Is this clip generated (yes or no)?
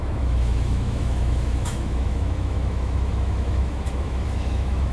yes